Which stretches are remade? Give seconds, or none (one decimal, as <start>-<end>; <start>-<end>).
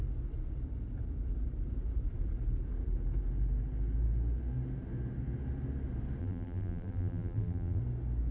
6.2-7.8